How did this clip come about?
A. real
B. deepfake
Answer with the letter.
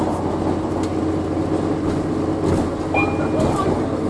A